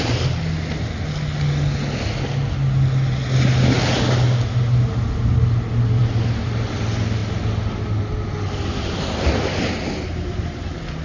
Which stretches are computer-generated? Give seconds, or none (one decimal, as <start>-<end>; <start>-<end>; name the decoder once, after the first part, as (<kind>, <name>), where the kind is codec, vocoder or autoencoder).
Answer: none